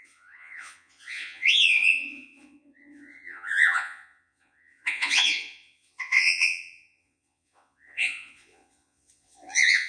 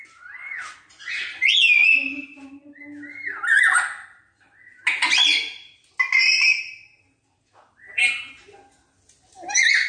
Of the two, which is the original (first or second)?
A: second